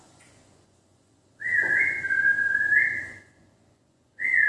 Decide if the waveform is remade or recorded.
remade